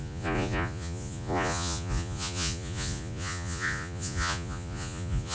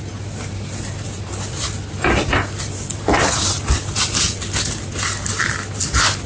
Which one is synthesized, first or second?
first